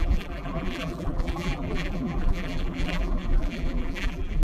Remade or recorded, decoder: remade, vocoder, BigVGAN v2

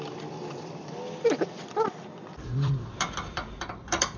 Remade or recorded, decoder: remade, vocoder, BigVGAN v2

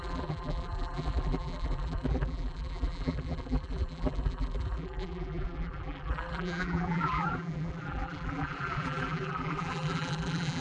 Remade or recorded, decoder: remade, vocoder, BigVGAN v2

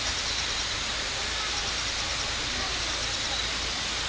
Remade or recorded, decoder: recorded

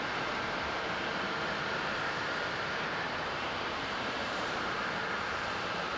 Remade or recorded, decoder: remade, vocoder, BigVGAN v2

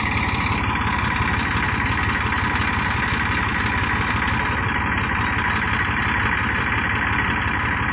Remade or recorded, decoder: recorded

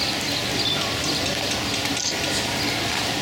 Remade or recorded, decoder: recorded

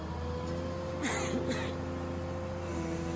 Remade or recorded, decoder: recorded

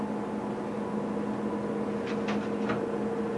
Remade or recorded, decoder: recorded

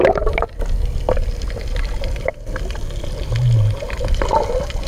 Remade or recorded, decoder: recorded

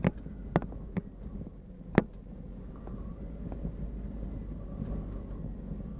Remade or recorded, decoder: recorded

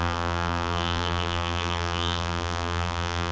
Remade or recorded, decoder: remade, vocoder, BigVGAN v2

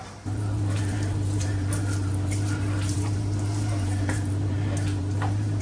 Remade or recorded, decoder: remade, vocoder, BigVGAN v2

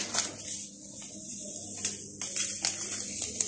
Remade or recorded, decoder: recorded